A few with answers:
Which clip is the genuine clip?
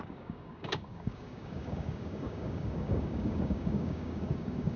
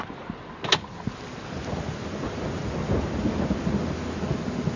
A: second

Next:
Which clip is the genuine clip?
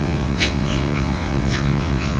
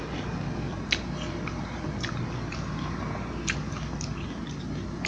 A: second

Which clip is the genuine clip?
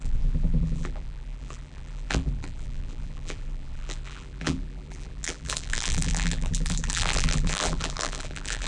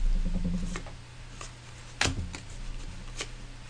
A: second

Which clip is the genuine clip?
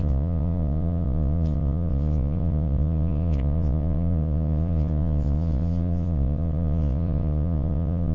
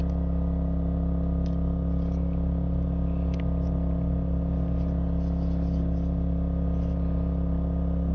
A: second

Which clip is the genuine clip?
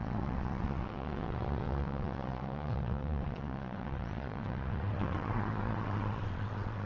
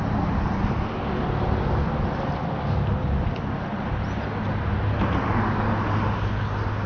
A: second